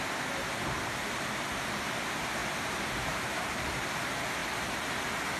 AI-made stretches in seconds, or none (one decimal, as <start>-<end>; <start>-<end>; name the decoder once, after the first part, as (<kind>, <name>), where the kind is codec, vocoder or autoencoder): 2.4-3.8 (vocoder, BigVGAN v2)